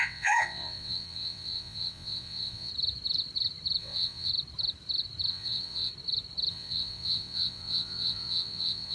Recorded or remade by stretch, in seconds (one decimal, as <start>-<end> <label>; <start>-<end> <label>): 0.0-2.7 remade; 2.7-3.8 recorded; 3.8-4.3 remade; 4.3-5.3 recorded; 5.3-5.9 remade; 5.9-6.5 recorded; 6.5-8.9 remade